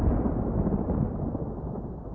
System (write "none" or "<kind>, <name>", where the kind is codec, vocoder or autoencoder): none